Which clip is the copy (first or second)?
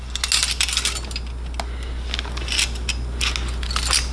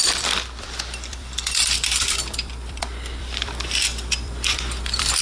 second